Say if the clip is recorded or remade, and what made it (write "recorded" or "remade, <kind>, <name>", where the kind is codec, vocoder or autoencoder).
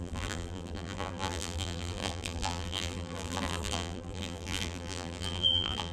remade, vocoder, BigVGAN v2